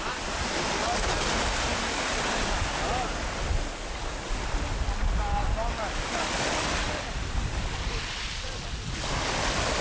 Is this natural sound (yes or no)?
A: yes